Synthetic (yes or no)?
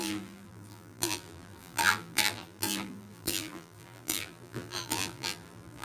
yes